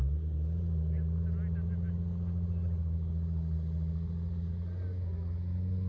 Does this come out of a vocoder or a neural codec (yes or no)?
no